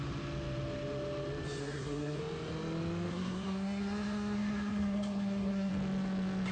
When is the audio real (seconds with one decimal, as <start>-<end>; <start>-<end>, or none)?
0.0-1.6; 2.2-3.1; 5.7-6.5